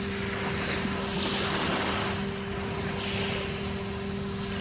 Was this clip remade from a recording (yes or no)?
no